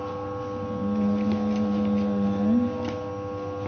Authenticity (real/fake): real